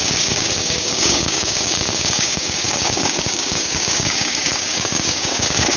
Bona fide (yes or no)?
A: no